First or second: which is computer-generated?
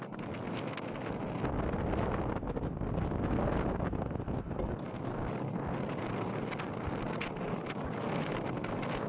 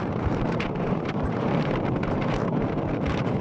second